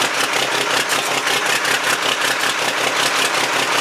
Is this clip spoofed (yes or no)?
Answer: no